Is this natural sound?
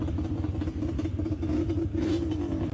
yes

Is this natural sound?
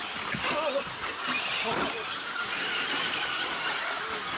yes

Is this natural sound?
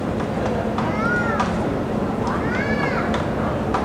yes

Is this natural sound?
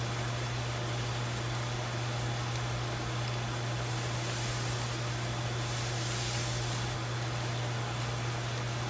yes